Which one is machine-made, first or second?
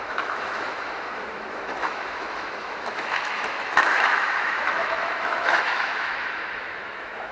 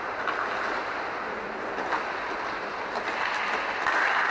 first